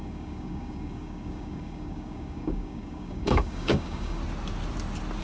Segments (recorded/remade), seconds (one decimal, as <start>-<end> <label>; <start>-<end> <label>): 0.0-4.2 remade; 4.2-5.2 recorded